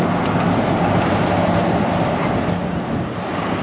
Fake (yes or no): no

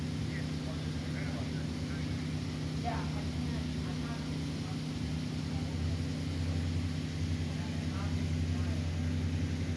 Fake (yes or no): no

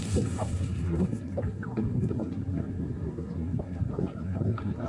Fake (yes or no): yes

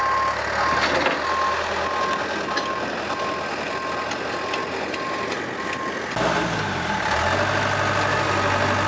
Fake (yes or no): no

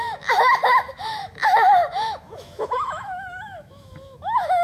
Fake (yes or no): yes